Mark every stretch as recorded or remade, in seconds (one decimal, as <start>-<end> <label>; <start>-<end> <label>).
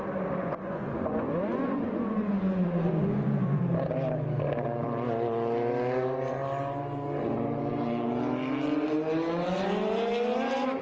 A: 0.0-0.4 recorded; 0.4-3.6 remade; 3.6-10.8 recorded